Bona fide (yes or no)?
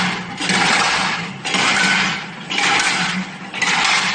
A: yes